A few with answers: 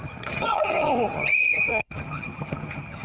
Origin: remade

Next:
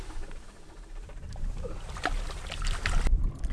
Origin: recorded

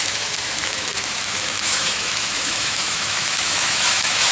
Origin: remade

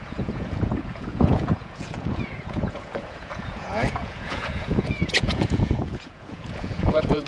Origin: remade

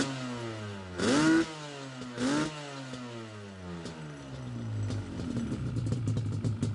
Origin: recorded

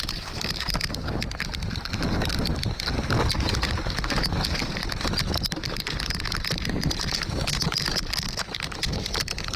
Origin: recorded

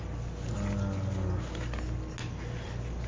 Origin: recorded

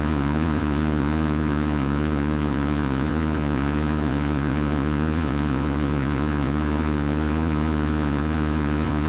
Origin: remade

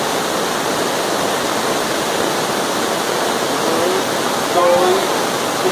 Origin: recorded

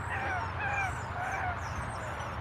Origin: recorded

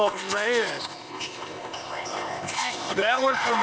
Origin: remade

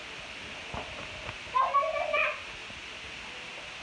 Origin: recorded